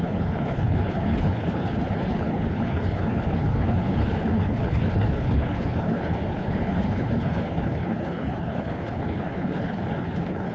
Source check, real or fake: fake